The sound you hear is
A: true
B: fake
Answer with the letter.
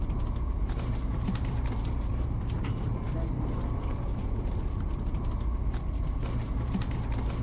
B